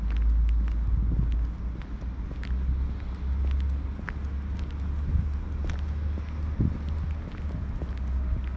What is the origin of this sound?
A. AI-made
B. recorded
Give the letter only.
B